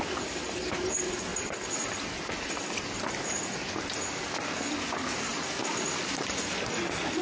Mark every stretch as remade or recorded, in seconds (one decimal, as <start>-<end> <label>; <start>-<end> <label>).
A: 0.0-7.2 recorded